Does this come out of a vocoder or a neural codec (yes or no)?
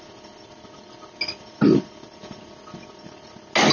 no